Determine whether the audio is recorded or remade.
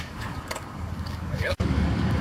remade